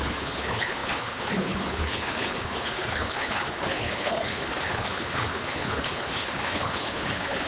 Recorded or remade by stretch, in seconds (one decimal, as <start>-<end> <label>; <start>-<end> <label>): 0.0-7.5 remade